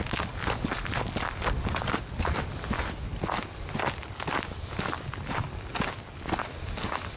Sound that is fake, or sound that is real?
real